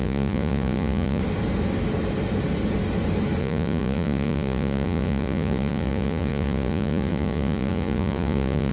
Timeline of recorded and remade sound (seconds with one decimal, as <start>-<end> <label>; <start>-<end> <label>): 0.0-1.2 remade; 1.2-3.4 recorded; 3.4-8.7 remade